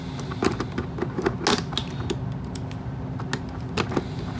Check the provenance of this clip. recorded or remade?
recorded